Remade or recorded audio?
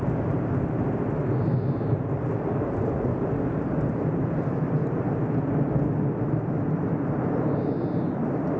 recorded